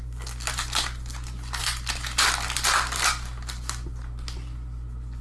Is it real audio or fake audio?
real